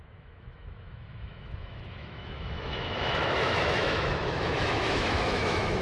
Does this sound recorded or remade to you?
remade